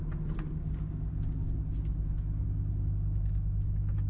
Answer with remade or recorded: recorded